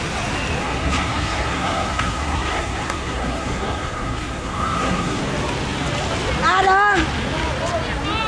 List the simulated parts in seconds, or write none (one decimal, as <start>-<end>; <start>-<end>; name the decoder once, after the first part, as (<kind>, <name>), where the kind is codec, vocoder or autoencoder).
0.6-5.2 (codec, SNAC)